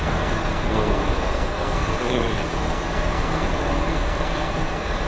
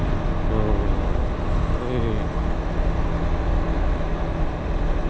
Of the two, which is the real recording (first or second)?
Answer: second